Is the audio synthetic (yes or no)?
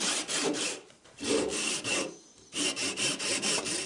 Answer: yes